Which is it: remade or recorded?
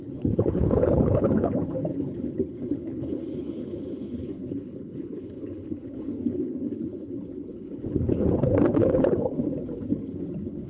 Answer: remade